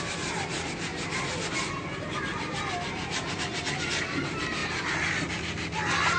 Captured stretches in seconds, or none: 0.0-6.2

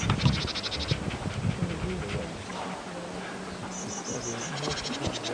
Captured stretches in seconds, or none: 0.0-5.3

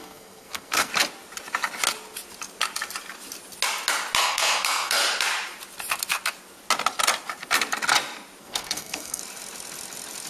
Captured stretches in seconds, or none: 0.9-4.2; 5.0-8.4; 9.2-10.3

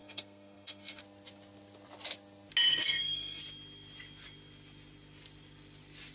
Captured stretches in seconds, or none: 1.0-2.7; 3.4-6.1

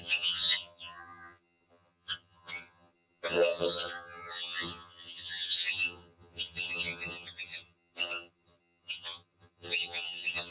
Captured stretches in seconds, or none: none